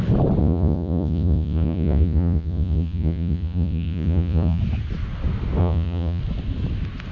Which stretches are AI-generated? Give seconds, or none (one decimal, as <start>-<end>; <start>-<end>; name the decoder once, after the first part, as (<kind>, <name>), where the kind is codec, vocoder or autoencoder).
0.4-4.6 (vocoder, Vocos); 5.6-6.2